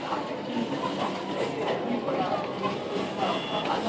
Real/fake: real